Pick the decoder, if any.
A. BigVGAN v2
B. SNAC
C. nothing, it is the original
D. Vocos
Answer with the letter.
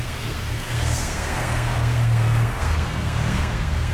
B